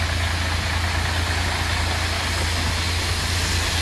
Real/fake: real